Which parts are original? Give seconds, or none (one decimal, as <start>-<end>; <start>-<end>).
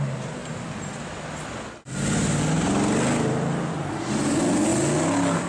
0.0-5.5